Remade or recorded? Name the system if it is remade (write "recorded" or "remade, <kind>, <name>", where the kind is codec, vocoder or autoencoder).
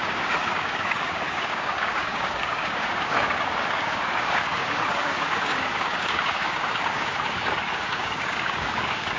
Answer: remade, codec, DAC